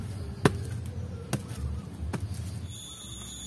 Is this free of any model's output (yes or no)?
yes